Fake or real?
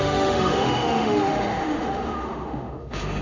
fake